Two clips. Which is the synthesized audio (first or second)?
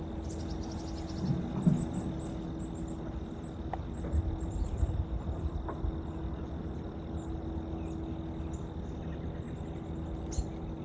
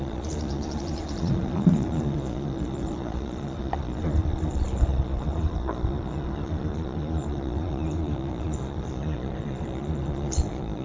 second